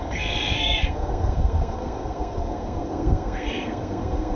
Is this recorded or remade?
remade